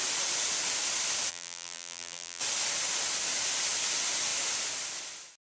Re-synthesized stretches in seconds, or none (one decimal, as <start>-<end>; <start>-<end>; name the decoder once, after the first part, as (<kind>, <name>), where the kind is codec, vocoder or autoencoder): 1.3-2.4 (vocoder, BigVGAN v2)